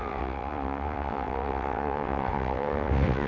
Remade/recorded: remade